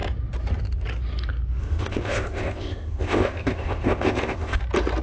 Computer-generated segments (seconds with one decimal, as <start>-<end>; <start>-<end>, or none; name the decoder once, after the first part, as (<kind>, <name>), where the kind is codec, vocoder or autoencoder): 1.6-4.6 (codec, ZipCodec)